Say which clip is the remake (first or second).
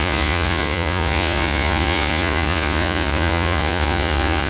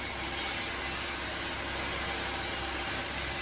first